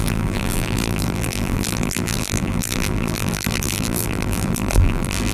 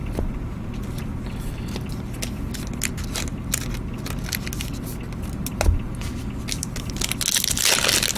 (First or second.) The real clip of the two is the second